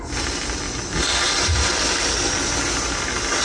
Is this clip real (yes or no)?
yes